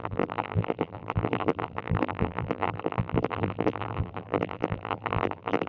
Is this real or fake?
fake